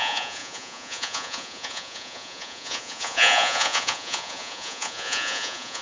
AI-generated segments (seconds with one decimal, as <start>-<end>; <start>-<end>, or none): 0.0-5.8

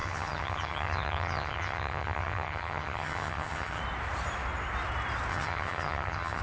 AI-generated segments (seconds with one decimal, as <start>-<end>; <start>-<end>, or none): 0.0-3.8; 5.3-6.4

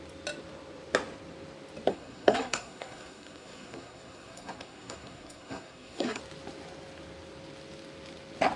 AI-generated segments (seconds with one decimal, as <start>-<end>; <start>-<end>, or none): 1.9-6.2

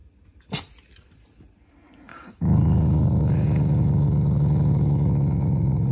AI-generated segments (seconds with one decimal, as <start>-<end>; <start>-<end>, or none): 2.1-5.9

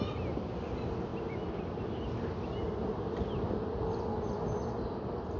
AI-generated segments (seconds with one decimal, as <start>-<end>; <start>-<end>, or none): none

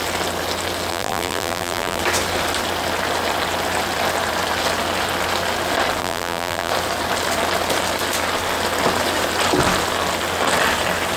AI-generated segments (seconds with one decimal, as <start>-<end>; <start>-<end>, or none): 0.9-2.0; 6.0-6.7

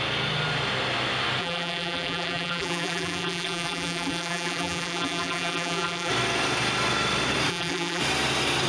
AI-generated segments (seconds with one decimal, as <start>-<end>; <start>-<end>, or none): 1.4-6.1; 7.5-8.0

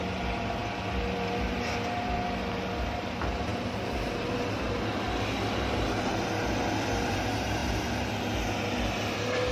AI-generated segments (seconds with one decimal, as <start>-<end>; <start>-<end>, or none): 0.0-9.5